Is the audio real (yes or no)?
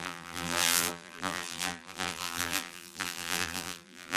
no